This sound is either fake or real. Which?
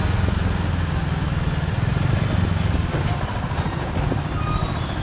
real